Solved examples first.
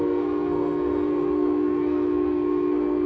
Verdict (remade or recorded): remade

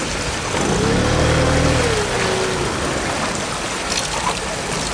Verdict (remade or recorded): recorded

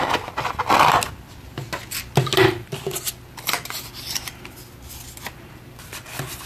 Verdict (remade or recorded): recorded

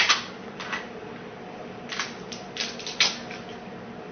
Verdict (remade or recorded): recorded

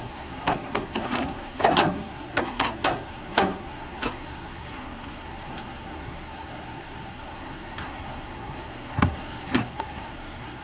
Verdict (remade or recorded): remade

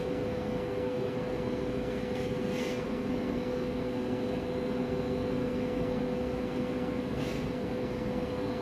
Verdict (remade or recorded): remade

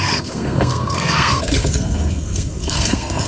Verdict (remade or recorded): remade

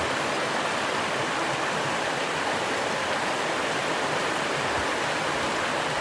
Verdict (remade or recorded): recorded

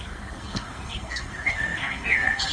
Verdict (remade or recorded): remade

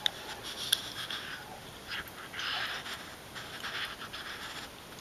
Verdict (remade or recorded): recorded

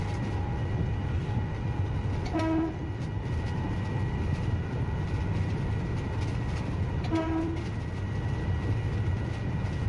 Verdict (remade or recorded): recorded